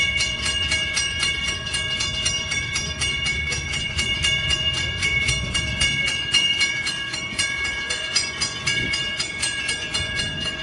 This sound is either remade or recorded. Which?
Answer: remade